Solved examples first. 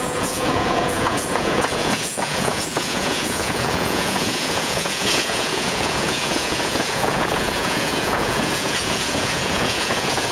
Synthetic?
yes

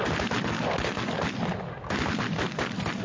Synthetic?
no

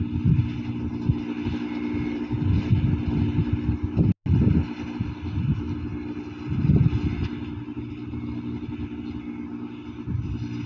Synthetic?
no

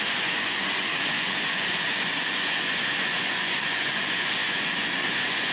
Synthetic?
yes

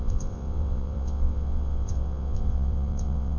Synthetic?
yes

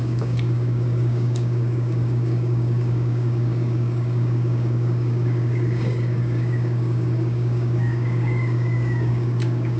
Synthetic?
yes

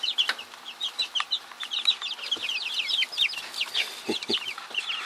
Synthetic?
no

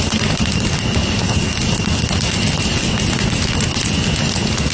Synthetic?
no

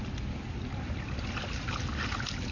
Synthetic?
no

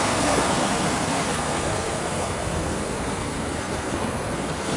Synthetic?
yes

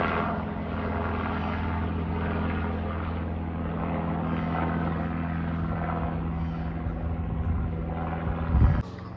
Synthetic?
no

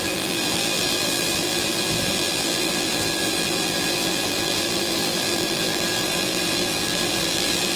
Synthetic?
yes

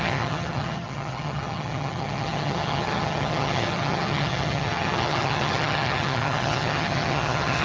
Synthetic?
yes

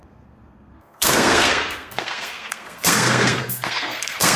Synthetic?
yes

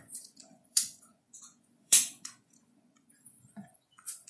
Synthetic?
yes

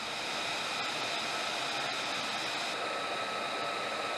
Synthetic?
no